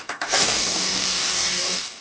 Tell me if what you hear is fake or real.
fake